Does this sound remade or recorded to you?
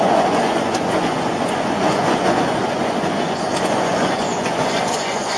remade